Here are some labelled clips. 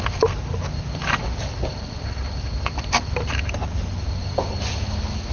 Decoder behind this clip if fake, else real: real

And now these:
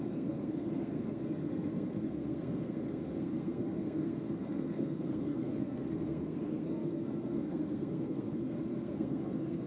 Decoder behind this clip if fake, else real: fake, codec, SNAC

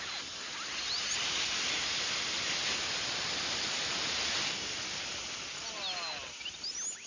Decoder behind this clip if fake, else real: real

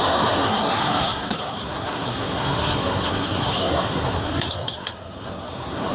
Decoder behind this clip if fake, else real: fake, codec, SNAC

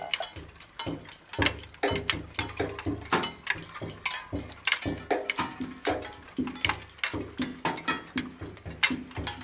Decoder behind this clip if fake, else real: real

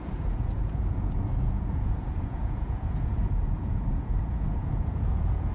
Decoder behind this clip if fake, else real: fake, vocoder, Vocos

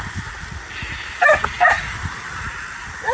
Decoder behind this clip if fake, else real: real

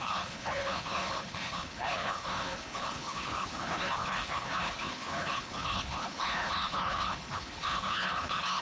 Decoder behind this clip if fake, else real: fake, codec, HILCodec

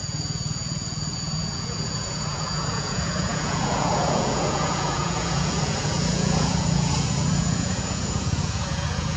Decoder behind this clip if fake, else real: fake, vocoder, Vocos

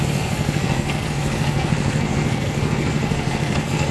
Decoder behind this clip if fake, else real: fake, codec, SNAC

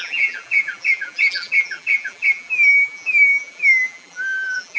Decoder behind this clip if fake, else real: fake, vocoder, BigVGAN v2